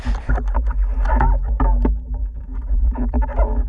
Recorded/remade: recorded